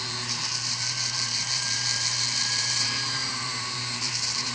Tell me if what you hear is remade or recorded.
remade